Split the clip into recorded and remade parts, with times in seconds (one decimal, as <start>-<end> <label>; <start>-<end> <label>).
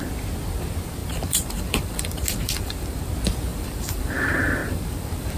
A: 0.0-1.0 recorded; 1.0-3.1 remade; 3.1-3.5 recorded; 3.5-4.1 remade; 4.1-4.6 recorded; 4.6-5.4 remade